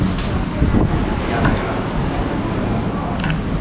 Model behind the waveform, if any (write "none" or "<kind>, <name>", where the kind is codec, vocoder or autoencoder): none